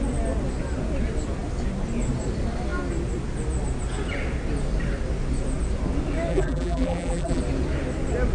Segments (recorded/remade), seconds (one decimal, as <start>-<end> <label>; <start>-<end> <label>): 0.0-6.3 recorded; 6.3-7.4 remade; 7.4-8.3 recorded